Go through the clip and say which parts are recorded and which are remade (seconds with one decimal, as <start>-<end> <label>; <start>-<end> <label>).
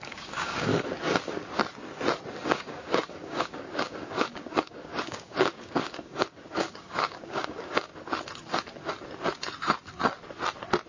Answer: 0.0-0.7 remade; 0.7-2.5 recorded; 2.5-7.9 remade; 7.9-10.9 recorded